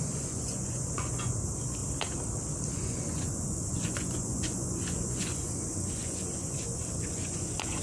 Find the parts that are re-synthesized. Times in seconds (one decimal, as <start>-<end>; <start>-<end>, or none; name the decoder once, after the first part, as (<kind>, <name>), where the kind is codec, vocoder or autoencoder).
0.0-1.8 (vocoder, Vocos); 2.7-7.8